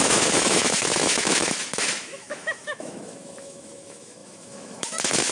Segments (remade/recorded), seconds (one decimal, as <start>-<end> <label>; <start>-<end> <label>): 0.0-5.3 remade